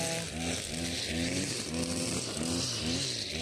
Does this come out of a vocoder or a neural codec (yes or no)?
no